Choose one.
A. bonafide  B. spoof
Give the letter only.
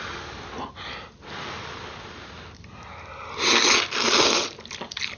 A